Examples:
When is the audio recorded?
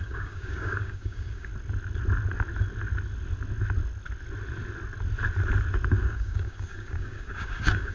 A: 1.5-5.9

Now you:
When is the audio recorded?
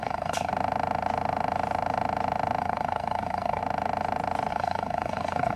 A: 0.5-2.6; 3.6-4.5